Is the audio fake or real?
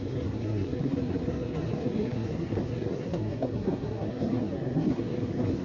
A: fake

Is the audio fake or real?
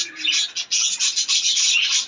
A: real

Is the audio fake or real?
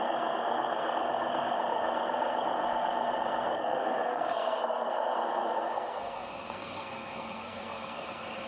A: fake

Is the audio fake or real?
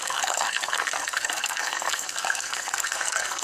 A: fake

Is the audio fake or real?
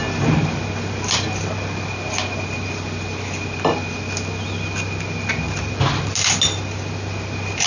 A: real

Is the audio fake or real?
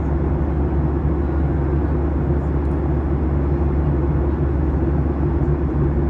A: real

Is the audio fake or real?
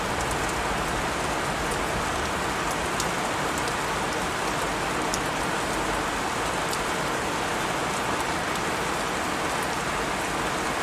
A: real